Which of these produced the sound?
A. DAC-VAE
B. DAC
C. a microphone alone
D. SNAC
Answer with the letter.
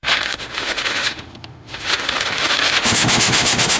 A